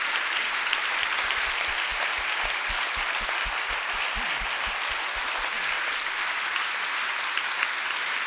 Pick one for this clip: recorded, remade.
recorded